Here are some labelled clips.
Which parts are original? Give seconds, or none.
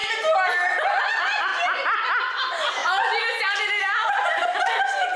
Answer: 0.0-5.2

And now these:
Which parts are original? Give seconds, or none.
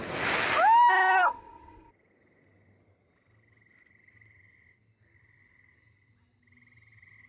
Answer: 0.0-0.9; 1.9-7.3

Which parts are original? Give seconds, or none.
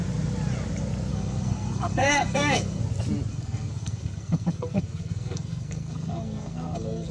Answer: 0.0-1.1; 2.8-3.3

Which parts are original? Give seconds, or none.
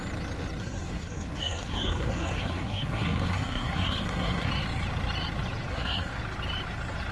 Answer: 0.0-0.6; 4.5-5.7; 6.2-7.1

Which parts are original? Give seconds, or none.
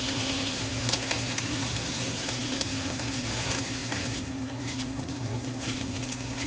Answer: none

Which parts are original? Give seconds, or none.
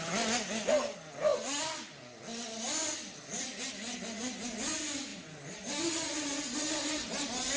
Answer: 0.0-7.6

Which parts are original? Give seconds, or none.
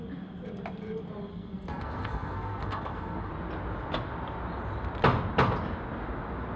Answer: 0.0-1.3; 3.3-6.6